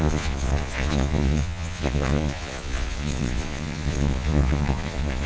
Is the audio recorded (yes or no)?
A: no